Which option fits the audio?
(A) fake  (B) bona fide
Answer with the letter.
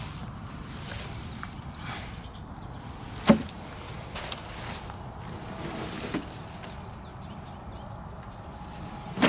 B